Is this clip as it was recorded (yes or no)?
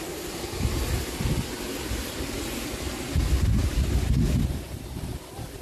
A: yes